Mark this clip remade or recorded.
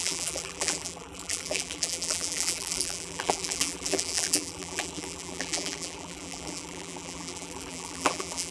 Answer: remade